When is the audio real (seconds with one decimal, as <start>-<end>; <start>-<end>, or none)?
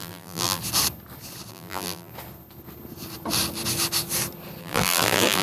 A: 0.6-1.5; 2.1-4.6